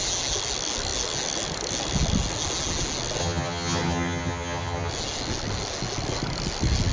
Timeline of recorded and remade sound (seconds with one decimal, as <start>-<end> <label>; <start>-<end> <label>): 0.0-3.2 recorded; 3.2-4.9 remade; 4.9-6.9 recorded